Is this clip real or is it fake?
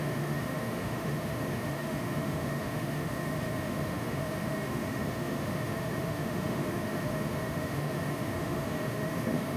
fake